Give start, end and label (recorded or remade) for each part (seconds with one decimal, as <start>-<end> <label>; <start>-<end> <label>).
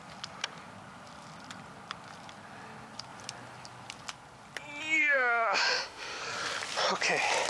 0.0-5.0 recorded; 5.0-6.2 remade; 6.2-7.5 recorded